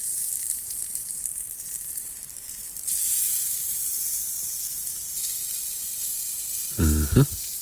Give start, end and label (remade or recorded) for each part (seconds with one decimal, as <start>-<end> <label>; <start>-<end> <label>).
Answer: 0.0-4.6 remade; 4.6-7.6 recorded